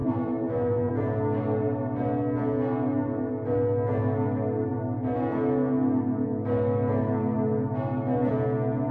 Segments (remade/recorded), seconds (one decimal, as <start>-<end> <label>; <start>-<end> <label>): 0.0-0.9 remade; 0.9-8.9 recorded